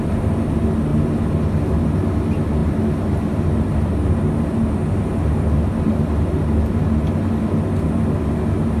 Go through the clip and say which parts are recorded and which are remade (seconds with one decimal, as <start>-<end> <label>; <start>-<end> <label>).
0.0-2.6 recorded; 2.6-3.9 remade; 3.9-8.8 recorded